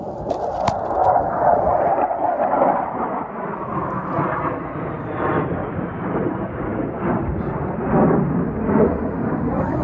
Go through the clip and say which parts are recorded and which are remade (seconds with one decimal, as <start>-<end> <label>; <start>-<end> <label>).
0.0-9.8 recorded